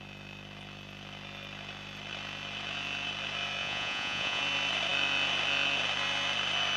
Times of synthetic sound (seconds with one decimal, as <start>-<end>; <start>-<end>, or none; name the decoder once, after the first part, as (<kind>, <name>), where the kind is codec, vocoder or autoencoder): 3.6-4.4 (vocoder, Vocos)